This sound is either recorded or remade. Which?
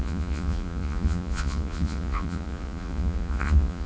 remade